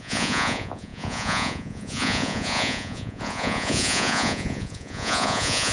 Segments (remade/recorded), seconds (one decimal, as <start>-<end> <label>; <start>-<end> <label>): 0.0-5.7 remade